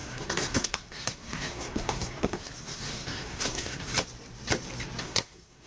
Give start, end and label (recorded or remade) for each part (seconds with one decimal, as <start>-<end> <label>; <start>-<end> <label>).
0.0-3.9 remade; 3.9-5.0 recorded; 5.0-5.7 remade